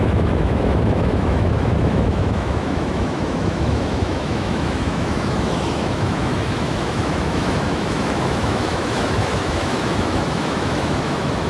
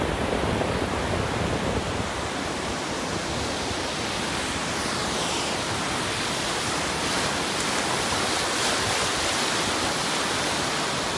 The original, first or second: second